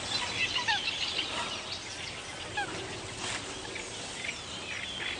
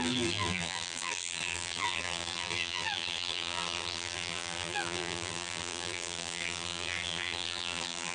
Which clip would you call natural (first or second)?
first